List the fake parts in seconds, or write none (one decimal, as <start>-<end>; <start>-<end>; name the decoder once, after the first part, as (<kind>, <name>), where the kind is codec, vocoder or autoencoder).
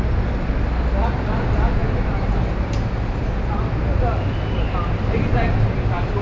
none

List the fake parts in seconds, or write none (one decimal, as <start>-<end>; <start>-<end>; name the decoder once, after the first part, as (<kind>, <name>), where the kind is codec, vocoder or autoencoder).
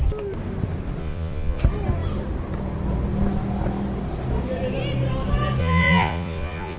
1.0-1.6 (vocoder, Vocos); 5.6-6.8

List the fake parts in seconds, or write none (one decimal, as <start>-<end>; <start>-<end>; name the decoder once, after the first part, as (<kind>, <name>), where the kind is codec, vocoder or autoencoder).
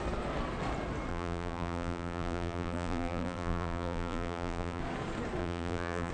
1.1-4.8 (vocoder, BigVGAN v2); 5.4-6.1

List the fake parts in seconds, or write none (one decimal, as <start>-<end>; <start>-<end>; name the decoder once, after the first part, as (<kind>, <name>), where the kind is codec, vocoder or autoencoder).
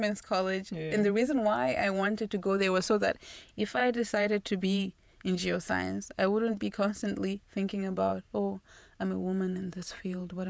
0.0-5.7 (vocoder, Vocos); 6.5-8.1; 9.0-10.5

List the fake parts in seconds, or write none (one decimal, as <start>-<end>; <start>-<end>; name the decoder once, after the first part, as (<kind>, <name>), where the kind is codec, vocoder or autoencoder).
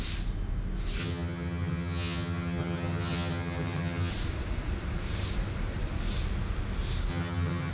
1.0-4.1 (vocoder, HiFi-GAN); 7.1-7.7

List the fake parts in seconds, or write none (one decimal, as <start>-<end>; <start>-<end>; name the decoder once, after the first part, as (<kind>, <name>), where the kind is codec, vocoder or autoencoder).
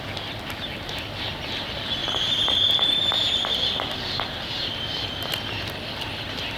2.0-5.1 (vocoder, BigVGAN v2)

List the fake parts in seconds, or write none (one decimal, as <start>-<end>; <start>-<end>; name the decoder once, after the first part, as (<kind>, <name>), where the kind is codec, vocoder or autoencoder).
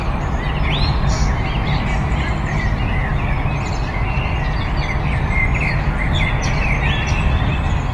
3.1-4.4 (vocoder, BigVGAN v2); 5.5-7.5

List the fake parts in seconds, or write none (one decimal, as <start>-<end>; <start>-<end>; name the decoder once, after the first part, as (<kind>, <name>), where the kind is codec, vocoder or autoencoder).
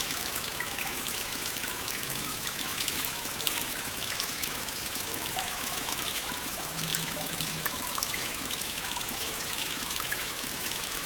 0.0-11.1 (autoencoder, DAC-VAE)